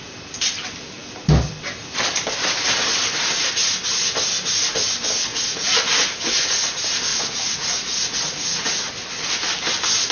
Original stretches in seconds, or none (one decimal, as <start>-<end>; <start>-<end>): 0.0-5.3; 6.1-7.1; 8.9-10.1